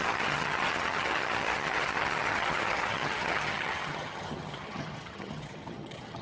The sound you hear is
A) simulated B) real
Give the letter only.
A